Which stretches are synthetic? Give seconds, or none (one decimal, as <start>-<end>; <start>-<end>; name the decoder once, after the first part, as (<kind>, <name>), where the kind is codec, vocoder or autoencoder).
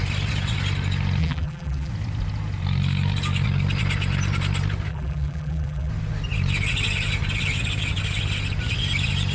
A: 1.2-1.9 (vocoder, BigVGAN v2); 4.9-5.9